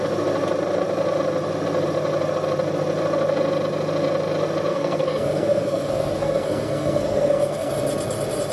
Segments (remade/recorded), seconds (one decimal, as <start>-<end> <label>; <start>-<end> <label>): 0.0-4.7 recorded; 4.7-7.7 remade; 7.7-8.5 recorded